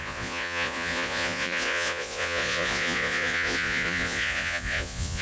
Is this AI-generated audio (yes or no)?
yes